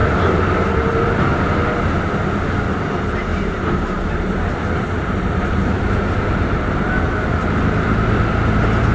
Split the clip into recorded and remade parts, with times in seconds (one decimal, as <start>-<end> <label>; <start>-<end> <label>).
0.0-1.4 remade; 1.4-3.3 recorded; 3.3-6.9 remade; 6.9-8.9 recorded